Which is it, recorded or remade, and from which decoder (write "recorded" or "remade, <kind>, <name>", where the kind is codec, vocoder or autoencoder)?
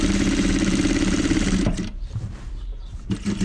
remade, vocoder, BigVGAN v2